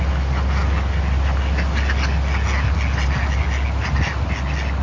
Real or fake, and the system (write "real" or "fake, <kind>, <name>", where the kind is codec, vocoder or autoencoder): real